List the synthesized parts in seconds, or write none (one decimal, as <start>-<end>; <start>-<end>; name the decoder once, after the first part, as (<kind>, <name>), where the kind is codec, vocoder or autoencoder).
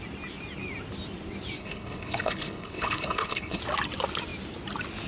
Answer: 1.6-3.6 (codec, HILCodec)